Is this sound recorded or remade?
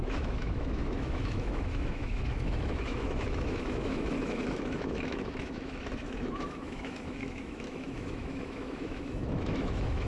remade